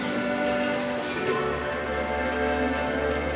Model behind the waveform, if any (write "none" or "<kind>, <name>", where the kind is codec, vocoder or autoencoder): none